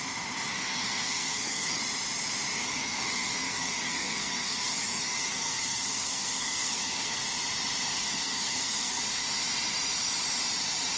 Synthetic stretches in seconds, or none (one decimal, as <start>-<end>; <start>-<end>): 0.5-1.8; 2.6-7.2; 7.9-9.0

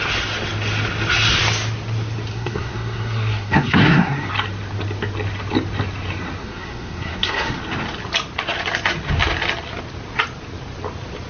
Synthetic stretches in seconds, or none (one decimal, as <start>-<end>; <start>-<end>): 2.3-4.3; 6.4-7.6

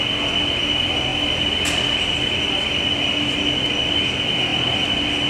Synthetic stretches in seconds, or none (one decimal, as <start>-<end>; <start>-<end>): none